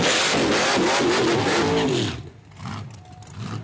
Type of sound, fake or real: real